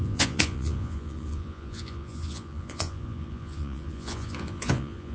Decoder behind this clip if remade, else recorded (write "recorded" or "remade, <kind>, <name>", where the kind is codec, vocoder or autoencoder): remade, vocoder, Vocos